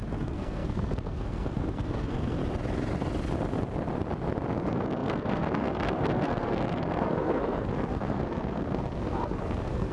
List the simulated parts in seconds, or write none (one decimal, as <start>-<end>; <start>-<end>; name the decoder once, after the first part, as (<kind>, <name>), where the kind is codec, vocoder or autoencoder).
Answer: 0.0-2.4 (codec, SNAC); 4.6-9.9